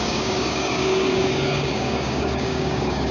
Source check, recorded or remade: remade